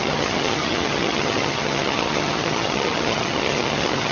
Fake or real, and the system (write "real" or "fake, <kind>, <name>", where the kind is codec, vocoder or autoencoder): fake, vocoder, HiFi-GAN